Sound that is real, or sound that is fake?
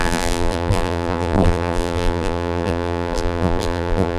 fake